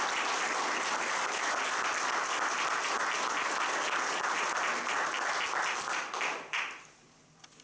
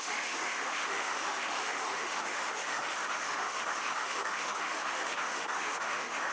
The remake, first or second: second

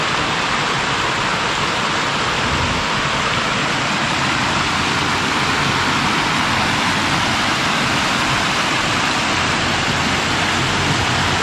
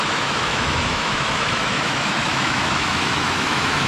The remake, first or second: second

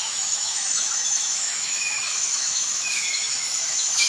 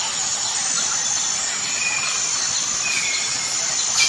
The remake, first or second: first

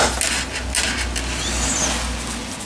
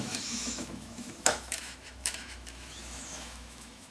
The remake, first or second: second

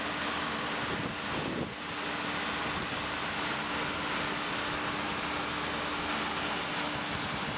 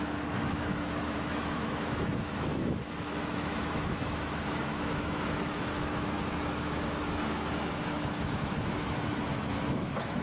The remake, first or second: second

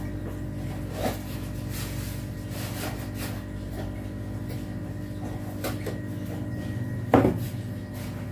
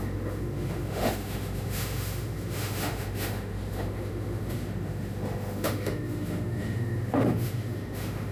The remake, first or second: second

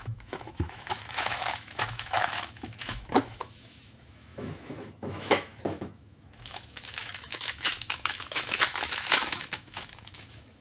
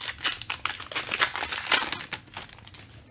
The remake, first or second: first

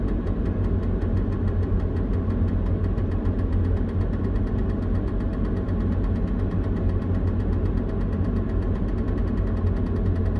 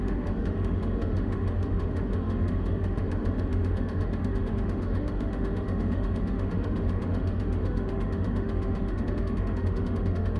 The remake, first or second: second